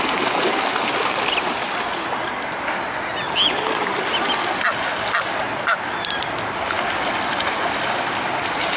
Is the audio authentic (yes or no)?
yes